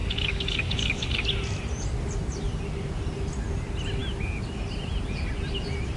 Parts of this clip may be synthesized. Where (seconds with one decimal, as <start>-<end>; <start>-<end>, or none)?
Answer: 0.0-1.1